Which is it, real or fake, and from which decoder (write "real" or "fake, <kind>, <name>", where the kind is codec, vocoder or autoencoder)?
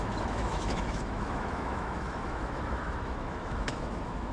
fake, autoencoder, DAC-VAE